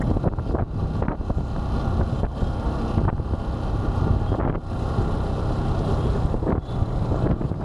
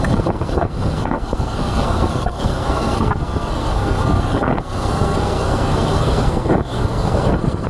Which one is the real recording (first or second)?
first